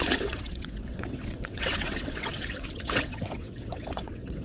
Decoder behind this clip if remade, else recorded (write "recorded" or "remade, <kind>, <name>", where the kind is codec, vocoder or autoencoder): remade, vocoder, WaveNeXt